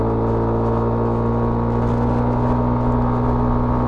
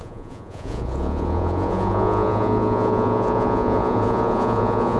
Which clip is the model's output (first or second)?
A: second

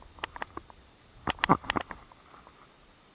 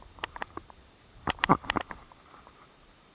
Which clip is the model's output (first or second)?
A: second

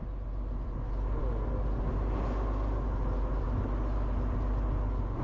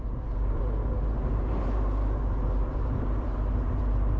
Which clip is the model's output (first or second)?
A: second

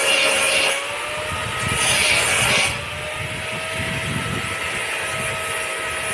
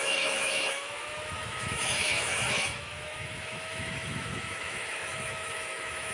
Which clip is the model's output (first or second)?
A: second